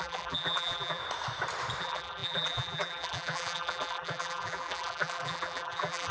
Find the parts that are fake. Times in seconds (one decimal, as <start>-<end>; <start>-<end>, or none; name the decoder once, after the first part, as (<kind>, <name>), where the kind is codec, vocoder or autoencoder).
0.0-1.0 (vocoder, BigVGAN v2); 1.8-6.1

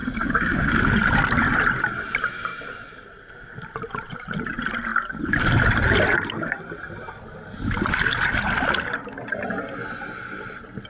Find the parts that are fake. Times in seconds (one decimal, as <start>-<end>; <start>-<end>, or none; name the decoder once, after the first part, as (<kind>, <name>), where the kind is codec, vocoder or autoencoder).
0.0-0.9 (codec, DAC)

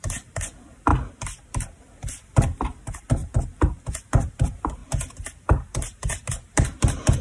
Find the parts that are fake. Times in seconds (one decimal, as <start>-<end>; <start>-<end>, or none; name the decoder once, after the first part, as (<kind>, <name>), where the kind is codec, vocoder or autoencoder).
0.0-4.8 (vocoder, BigVGAN v2); 6.3-7.2

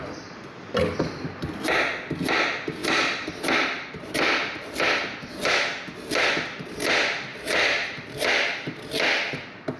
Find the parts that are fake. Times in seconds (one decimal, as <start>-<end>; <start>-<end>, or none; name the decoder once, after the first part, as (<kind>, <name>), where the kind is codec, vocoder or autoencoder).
2.8-5.5 (vocoder, BigVGAN v2); 7.3-8.3

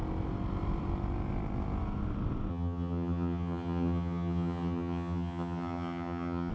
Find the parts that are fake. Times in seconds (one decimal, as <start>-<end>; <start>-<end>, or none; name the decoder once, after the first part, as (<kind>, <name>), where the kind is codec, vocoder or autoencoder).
2.5-6.5 (vocoder, HiFi-GAN)

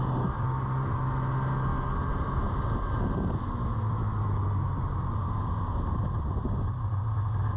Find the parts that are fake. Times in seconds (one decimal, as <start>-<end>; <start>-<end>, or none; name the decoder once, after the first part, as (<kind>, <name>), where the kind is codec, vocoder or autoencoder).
none